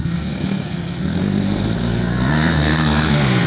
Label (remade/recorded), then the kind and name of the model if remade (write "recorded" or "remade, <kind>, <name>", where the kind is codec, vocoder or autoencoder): remade, codec, SNAC